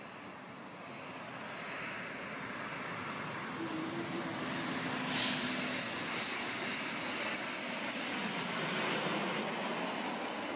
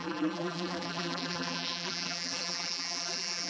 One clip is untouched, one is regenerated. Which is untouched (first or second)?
first